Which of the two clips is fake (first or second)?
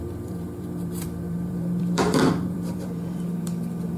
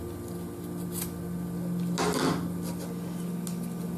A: first